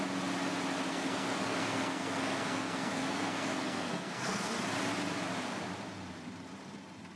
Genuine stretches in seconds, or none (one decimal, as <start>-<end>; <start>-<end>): 0.0-0.8; 4.5-7.2